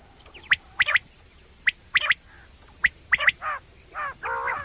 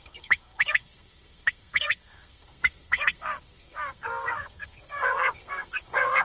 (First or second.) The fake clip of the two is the second